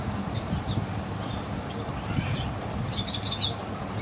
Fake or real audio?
real